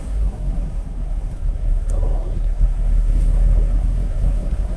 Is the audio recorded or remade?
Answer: remade